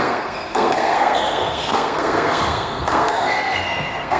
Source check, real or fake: fake